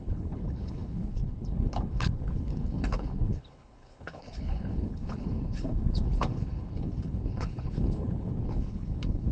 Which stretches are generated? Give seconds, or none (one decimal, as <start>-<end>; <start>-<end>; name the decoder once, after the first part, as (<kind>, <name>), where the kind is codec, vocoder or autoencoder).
0.0-9.3 (codec, HILCodec)